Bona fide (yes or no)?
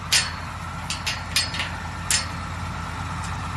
yes